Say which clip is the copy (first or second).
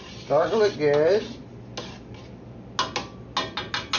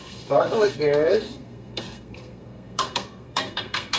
second